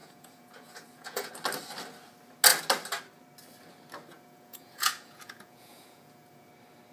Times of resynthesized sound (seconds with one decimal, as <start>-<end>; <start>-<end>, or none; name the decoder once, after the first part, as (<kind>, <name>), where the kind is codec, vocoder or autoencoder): 0.0-1.3 (vocoder, Vocos); 4.1-6.5